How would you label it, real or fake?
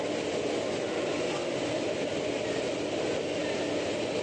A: real